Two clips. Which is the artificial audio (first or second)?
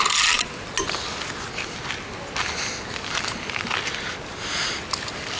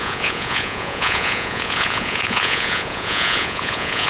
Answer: second